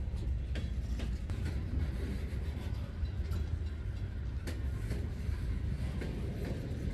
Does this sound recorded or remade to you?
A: recorded